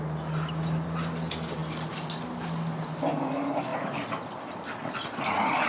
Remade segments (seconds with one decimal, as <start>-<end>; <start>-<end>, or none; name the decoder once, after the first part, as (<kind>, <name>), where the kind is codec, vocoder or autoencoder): 1.6-2.8 (vocoder, BigVGAN v2); 3.7-4.8